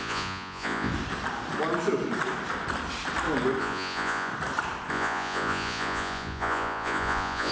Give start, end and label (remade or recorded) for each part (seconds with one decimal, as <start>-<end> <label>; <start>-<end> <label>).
0.0-0.9 remade; 0.9-3.6 recorded; 3.6-4.3 remade; 4.3-4.9 recorded; 4.9-7.5 remade